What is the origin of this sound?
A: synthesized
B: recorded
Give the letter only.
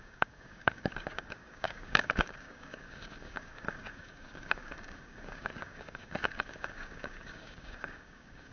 A